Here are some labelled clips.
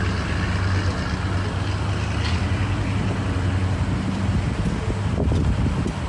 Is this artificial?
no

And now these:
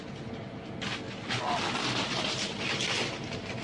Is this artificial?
no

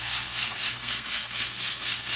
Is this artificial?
yes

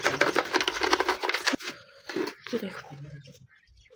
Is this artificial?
no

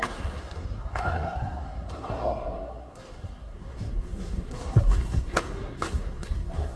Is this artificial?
yes